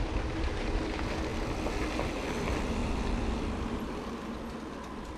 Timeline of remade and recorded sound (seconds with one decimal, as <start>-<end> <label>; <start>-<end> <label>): 0.0-5.2 recorded